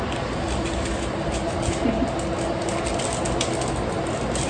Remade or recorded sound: recorded